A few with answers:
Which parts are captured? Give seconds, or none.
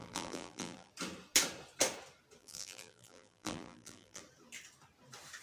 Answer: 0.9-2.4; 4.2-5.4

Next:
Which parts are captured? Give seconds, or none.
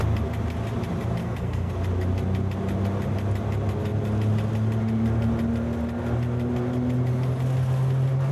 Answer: 0.0-1.2; 1.7-8.3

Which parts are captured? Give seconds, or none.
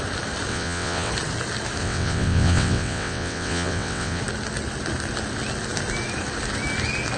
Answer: 0.0-0.5; 1.1-1.8; 4.2-7.2